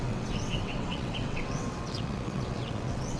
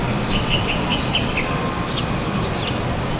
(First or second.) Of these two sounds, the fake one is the first